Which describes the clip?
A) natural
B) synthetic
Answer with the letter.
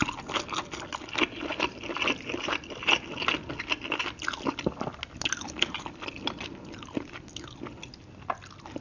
A